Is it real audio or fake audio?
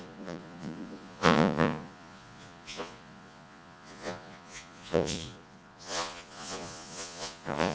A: fake